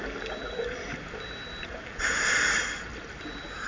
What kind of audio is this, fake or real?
real